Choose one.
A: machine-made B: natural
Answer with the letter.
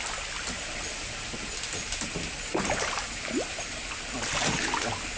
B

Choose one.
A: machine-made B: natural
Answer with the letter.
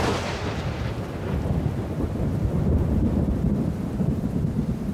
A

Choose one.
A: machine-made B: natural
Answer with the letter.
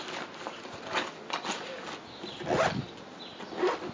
B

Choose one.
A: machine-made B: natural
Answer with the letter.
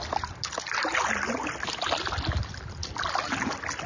B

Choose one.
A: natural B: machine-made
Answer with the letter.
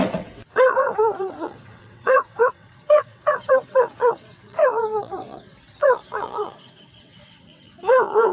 B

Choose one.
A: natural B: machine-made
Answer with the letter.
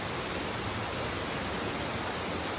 A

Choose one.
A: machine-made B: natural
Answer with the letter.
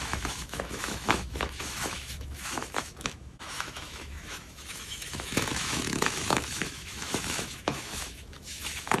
A